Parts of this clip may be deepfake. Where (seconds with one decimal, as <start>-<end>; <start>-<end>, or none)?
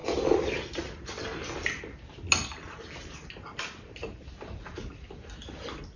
0.0-1.4